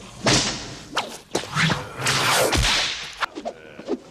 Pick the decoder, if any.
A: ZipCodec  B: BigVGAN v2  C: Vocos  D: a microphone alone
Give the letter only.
D